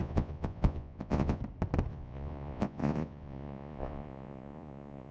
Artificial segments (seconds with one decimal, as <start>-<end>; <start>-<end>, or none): 0.0-1.4; 1.9-5.1